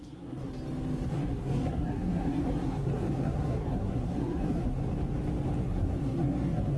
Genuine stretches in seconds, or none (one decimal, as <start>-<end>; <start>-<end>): 0.5-1.1; 4.8-5.6

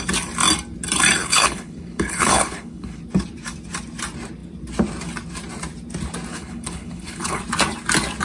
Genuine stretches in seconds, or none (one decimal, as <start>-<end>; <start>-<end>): 0.0-1.2; 3.0-6.3; 7.4-8.2

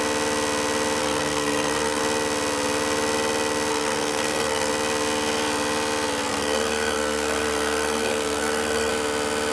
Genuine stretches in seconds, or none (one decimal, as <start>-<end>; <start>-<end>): 0.0-1.0; 2.0-3.7; 4.7-6.3; 8.9-9.5

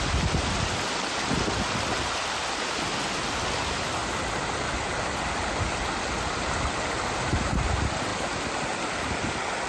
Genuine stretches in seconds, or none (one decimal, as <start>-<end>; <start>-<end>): 0.0-4.0; 5.4-9.7

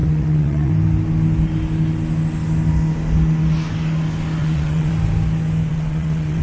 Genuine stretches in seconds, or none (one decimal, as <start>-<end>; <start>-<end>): 0.7-4.4; 4.9-5.7

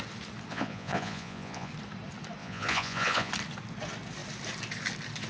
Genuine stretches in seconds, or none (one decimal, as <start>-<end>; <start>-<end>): 0.0-0.5; 1.7-2.4; 3.3-5.3

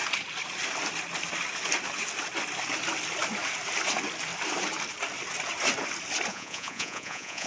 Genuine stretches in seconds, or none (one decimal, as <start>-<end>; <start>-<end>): 0.0-6.3